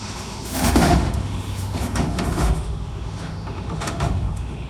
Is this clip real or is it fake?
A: fake